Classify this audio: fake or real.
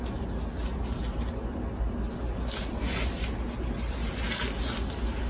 real